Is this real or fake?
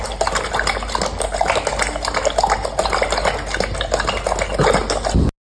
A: real